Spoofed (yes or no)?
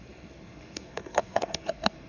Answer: yes